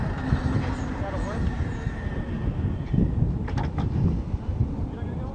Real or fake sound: real